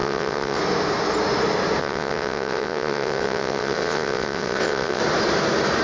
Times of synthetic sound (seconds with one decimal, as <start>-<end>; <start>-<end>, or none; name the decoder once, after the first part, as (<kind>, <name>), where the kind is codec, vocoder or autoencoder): 0.0-0.6 (vocoder, WaveNeXt); 1.8-5.0